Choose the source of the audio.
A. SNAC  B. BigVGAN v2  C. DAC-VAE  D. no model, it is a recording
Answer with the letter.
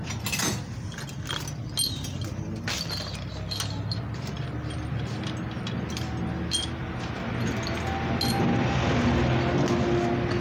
D